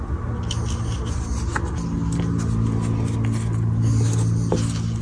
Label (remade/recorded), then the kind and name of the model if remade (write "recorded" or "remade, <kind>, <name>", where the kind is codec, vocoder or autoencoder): recorded